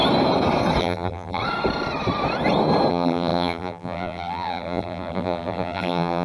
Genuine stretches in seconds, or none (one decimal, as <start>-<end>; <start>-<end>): 0.0-0.8; 1.4-2.9